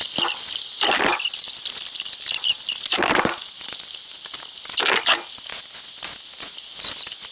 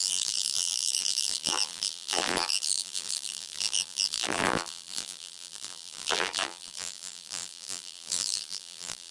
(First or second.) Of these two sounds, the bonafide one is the first